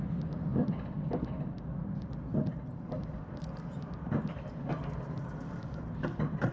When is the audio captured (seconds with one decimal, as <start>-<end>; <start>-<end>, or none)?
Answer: 0.0-6.5